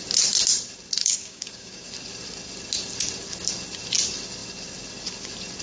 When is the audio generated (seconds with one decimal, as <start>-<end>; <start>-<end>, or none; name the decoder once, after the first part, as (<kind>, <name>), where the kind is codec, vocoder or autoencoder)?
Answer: 1.0-1.9 (codec, DAC)